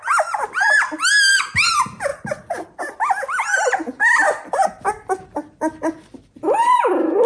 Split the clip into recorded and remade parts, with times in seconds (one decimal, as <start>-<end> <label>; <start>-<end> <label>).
0.0-7.3 recorded